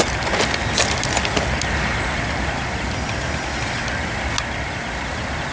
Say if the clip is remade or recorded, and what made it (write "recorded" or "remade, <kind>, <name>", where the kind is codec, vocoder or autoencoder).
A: recorded